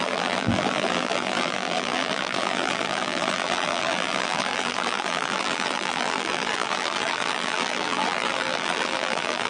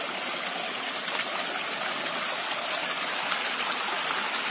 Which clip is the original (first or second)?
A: second